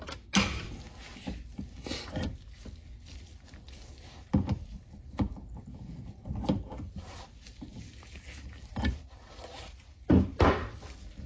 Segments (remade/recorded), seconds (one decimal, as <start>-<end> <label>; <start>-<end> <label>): 0.0-11.3 recorded